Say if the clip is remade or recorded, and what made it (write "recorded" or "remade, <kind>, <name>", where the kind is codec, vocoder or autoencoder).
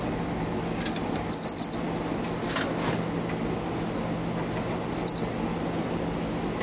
recorded